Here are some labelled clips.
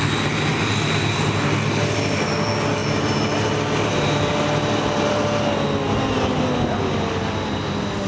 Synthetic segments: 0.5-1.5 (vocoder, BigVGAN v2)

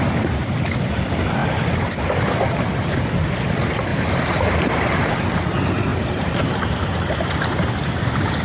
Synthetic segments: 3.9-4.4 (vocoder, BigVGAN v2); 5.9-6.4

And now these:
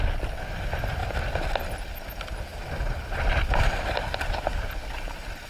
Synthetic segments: none

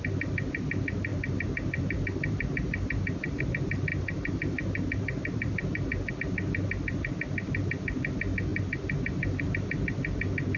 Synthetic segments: 1.1-3.4 (vocoder, BigVGAN v2); 3.9-6.1; 8.5-9.4

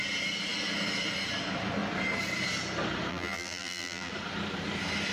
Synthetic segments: 3.1-4.1 (vocoder, BigVGAN v2)

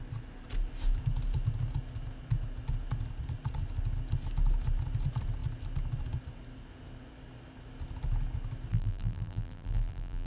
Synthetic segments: 8.7-10.3 (vocoder, BigVGAN v2)